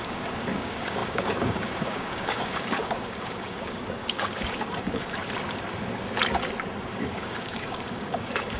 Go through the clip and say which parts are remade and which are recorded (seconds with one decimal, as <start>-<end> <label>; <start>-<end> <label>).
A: 0.0-5.2 remade; 5.2-6.8 recorded; 6.8-8.6 remade